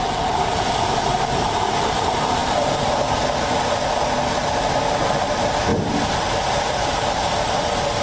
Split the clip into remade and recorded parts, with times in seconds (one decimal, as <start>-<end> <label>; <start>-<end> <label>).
0.0-8.0 recorded